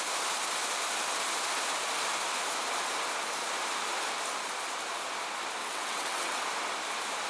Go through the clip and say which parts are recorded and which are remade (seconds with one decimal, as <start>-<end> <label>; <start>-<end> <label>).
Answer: 0.0-5.6 recorded; 5.6-6.4 remade; 6.4-7.3 recorded